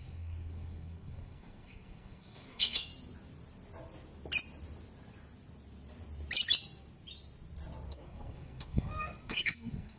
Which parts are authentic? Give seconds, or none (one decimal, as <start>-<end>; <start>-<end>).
2.9-7.9